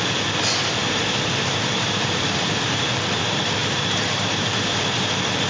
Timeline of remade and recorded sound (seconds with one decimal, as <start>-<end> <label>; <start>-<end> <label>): 0.0-0.8 recorded; 0.8-3.2 remade; 3.2-3.6 recorded; 3.6-4.5 remade; 4.5-5.5 recorded